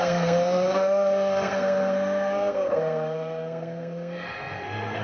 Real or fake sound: fake